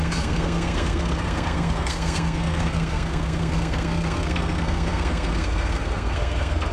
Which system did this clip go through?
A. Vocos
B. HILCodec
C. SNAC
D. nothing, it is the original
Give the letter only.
C